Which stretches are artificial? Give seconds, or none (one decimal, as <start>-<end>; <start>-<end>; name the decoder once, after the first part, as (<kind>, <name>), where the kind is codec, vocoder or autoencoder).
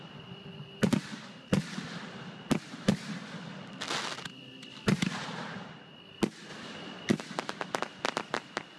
none